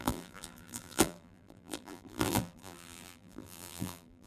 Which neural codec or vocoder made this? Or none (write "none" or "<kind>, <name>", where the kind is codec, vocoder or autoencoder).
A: vocoder, BigVGAN v2